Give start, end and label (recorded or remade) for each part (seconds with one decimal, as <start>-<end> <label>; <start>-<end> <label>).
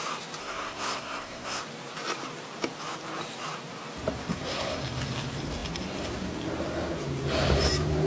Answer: 0.0-0.4 recorded; 0.4-1.6 remade; 1.6-4.3 recorded; 4.3-4.8 remade; 4.8-8.1 recorded